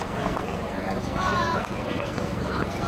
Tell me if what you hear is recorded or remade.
remade